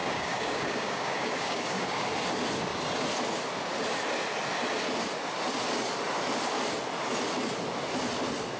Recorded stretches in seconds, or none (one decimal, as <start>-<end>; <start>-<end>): 2.1-8.6